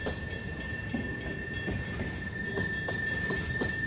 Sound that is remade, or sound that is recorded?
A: recorded